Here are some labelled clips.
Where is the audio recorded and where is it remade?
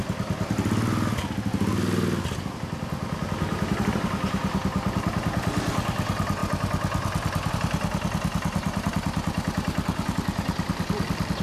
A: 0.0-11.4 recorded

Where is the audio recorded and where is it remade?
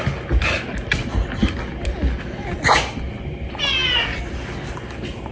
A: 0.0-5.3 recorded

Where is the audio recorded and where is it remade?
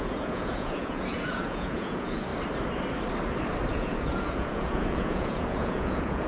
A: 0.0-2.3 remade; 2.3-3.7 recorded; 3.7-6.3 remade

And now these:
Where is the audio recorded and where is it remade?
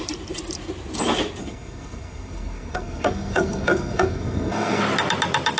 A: 0.0-1.4 recorded; 1.4-4.8 remade; 4.8-5.6 recorded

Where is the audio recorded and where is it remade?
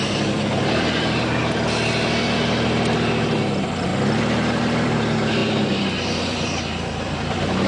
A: 0.0-3.9 remade; 3.9-4.6 recorded; 4.6-7.7 remade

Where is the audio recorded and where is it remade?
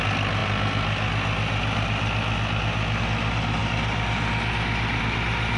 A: 0.0-5.6 recorded